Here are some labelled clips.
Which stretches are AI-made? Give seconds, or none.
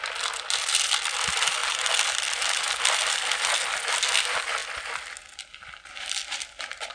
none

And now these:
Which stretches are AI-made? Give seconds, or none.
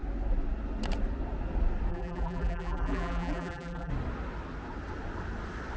1.9-3.9 (vocoder, BigVGAN v2)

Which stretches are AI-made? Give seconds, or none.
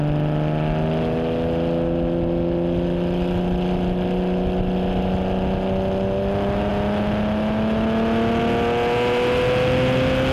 none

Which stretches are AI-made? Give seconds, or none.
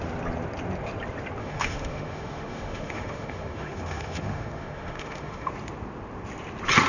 1.4-5.5 (autoencoder, DAC-VAE)